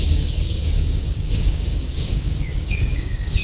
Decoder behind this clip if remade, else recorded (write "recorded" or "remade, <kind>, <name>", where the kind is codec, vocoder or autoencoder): remade, codec, DAC